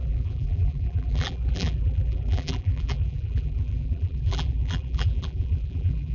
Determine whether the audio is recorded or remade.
remade